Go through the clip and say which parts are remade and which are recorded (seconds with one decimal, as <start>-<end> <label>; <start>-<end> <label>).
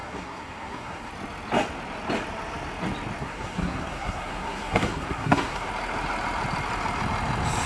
0.0-1.1 remade; 1.1-3.2 recorded; 3.2-5.7 remade; 5.7-7.7 recorded